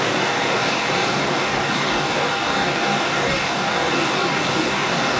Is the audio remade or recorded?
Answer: remade